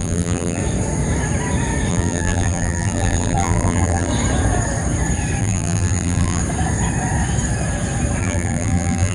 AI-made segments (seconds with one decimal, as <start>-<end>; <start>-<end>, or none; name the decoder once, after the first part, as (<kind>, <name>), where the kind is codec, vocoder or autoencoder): 0.0-0.6 (vocoder, BigVGAN v2); 1.9-4.1; 5.4-6.4; 8.2-9.1